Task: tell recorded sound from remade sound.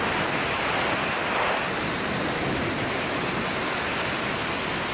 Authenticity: recorded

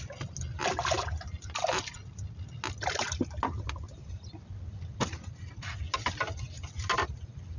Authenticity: recorded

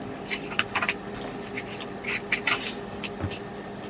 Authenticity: recorded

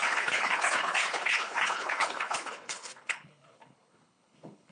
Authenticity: remade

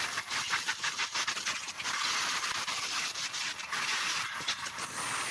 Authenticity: recorded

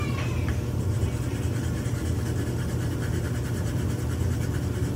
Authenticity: recorded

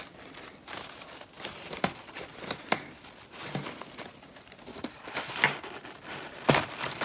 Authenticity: recorded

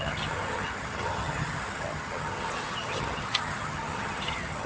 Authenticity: remade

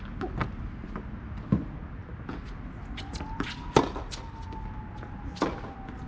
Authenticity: recorded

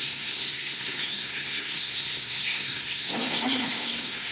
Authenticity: remade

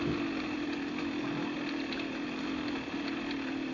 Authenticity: recorded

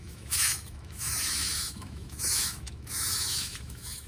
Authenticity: remade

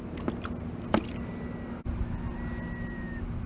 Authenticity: recorded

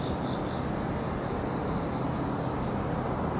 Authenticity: recorded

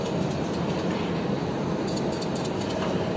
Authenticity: recorded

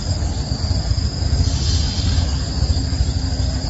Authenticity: recorded